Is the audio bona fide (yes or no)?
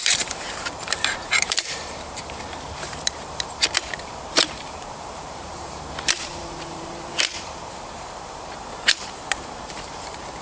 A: no